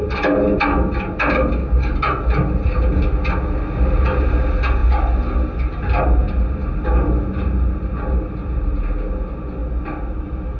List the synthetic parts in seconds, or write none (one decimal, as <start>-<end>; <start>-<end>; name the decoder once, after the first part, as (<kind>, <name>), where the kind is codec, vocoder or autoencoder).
none